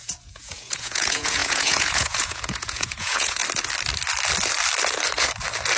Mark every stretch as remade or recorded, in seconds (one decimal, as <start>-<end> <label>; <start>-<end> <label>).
0.0-3.4 remade; 3.4-5.8 recorded